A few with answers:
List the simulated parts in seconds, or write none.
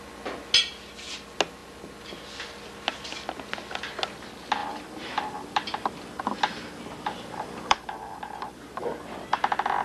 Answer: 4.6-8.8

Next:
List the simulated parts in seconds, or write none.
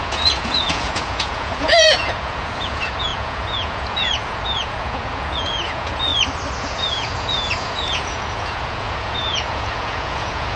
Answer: 0.0-6.1; 6.6-10.6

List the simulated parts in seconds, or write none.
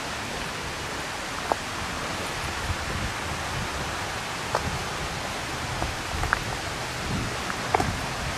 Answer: none